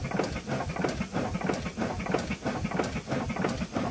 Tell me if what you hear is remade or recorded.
recorded